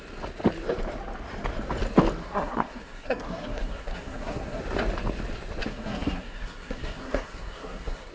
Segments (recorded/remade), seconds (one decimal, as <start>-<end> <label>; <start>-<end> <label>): 0.0-2.2 recorded; 2.2-4.6 remade; 4.6-5.6 recorded; 5.6-8.1 remade